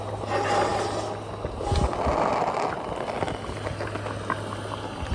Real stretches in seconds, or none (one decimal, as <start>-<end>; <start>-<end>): 0.0-5.1